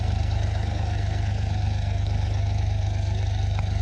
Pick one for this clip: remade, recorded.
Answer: remade